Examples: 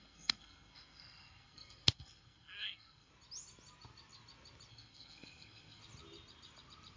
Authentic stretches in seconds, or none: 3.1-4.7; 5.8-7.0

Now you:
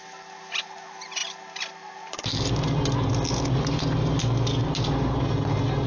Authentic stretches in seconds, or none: 0.0-5.9

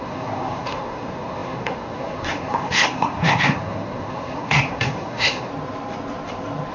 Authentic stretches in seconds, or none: 5.5-6.7

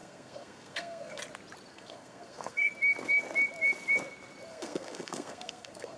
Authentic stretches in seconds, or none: 1.2-1.7; 2.7-4.5

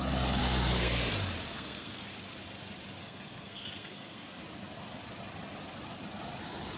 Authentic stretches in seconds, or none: 0.0-0.4; 1.1-1.5; 2.0-3.0; 4.4-6.8